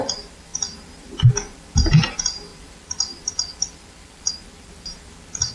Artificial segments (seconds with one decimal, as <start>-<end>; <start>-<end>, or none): 2.5-4.3